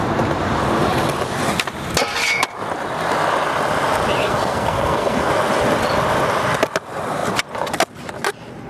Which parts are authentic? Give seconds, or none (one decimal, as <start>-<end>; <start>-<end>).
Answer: 0.0-4.2; 5.3-8.7